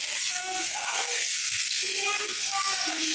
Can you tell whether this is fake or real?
fake